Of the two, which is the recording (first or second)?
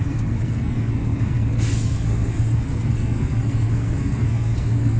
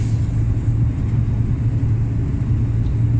second